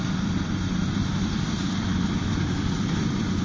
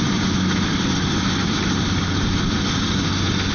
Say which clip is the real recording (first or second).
second